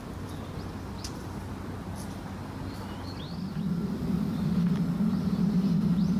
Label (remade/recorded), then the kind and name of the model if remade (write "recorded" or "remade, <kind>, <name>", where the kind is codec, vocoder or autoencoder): recorded